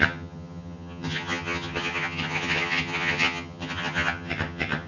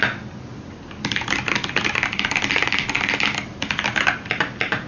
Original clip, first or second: second